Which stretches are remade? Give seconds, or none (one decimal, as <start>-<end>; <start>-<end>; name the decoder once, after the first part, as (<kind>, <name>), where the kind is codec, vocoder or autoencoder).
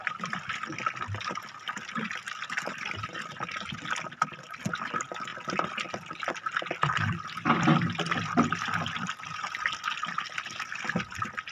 none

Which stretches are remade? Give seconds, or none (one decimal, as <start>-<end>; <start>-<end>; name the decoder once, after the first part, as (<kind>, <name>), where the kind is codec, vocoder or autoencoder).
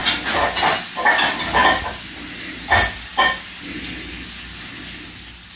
none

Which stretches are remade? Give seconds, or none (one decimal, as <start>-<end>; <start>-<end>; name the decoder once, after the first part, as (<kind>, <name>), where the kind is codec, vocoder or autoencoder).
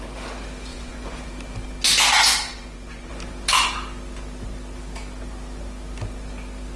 0.7-1.3 (vocoder, Vocos); 2.3-3.1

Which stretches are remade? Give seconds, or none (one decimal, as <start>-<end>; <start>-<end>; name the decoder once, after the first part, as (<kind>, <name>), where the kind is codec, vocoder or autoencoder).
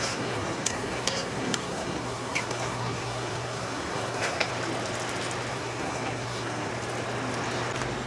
0.0-4.5 (codec, SNAC); 5.5-6.7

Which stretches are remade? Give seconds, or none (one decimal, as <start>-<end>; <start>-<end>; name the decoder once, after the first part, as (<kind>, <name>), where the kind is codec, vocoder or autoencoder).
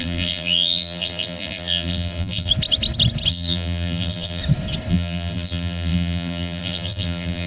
0.0-2.5 (vocoder, BigVGAN v2); 3.3-4.4; 4.9-7.5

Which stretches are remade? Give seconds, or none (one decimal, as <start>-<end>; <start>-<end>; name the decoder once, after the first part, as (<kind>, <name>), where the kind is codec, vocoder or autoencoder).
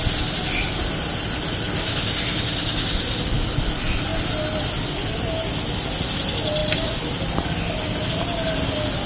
6.6-8.1 (vocoder, BigVGAN v2)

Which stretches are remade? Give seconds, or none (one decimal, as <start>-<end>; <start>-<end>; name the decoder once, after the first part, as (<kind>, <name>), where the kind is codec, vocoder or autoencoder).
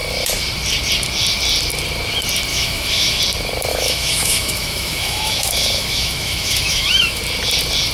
2.5-3.2 (autoencoder, DAC-VAE); 3.7-7.2